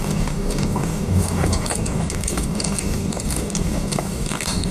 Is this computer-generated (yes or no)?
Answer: yes